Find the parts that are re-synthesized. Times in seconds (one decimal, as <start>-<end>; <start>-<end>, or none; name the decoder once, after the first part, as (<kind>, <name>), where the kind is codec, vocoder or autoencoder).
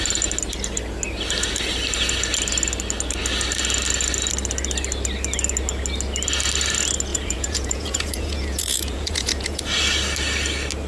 7.1-9.6 (vocoder, Vocos)